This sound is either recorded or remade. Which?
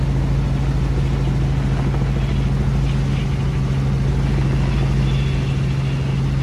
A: recorded